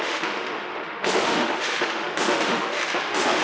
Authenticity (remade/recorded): remade